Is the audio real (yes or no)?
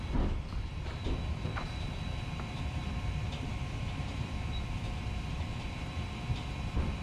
no